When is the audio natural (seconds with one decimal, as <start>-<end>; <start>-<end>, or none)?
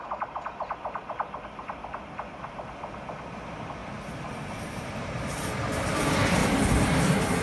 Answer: 0.0-3.8; 5.4-7.4